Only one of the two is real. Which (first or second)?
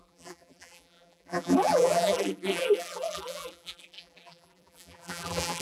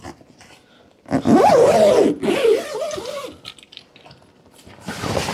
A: second